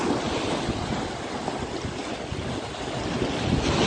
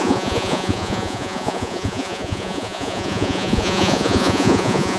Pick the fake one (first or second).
second